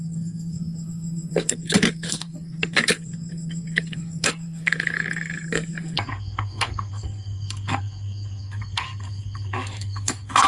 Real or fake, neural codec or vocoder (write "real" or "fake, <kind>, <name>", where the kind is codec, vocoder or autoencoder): fake, codec, SNAC